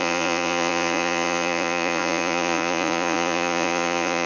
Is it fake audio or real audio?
fake